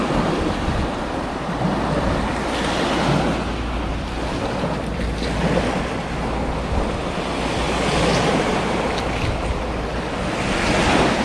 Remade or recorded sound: recorded